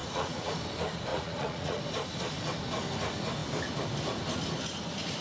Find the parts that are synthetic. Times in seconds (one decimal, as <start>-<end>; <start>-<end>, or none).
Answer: 0.0-0.5; 1.1-1.8